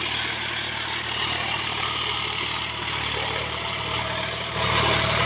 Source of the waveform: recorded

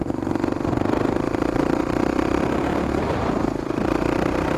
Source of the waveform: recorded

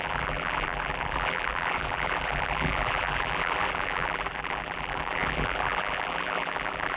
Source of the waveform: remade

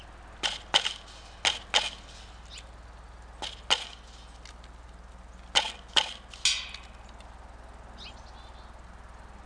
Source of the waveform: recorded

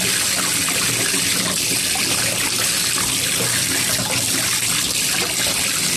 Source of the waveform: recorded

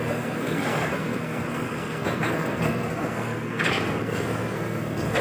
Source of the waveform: remade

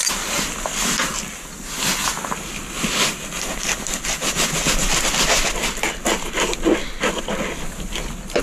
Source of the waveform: recorded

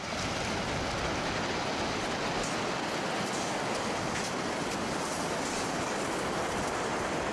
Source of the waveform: recorded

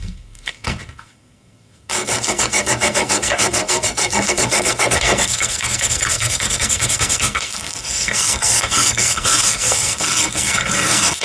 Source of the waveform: remade